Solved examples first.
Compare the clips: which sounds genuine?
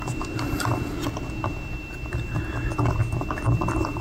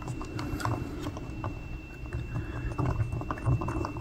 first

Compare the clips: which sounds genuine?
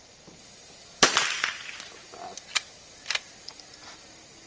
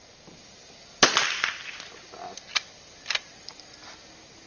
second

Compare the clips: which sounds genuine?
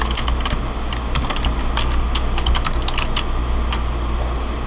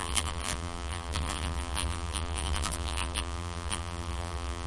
first